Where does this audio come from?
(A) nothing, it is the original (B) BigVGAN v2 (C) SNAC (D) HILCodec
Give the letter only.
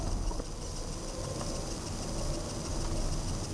A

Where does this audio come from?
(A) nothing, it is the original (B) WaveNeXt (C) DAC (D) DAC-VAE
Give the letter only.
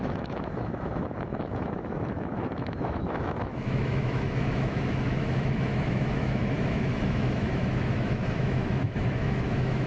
D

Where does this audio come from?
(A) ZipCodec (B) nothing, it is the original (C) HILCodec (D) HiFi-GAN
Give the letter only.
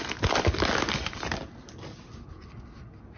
B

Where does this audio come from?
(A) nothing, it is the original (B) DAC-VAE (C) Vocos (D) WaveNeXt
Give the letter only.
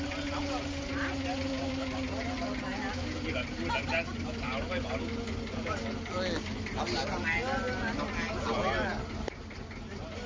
A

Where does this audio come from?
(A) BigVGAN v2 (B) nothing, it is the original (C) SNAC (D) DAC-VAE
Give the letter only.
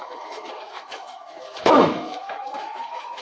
D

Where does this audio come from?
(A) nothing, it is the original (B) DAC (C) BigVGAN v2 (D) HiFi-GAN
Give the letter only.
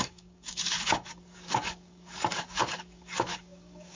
B